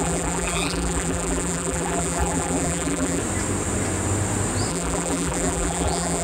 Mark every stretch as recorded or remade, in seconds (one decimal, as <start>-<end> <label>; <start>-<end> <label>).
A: 0.0-3.2 remade; 3.2-4.7 recorded; 4.7-6.2 remade